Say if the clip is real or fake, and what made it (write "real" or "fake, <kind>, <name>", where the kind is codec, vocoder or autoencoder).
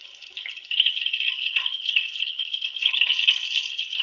fake, codec, HILCodec